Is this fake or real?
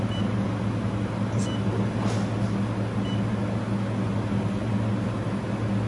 real